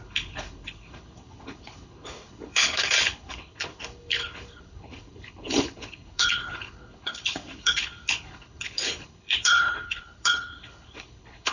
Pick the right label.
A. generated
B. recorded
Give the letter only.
A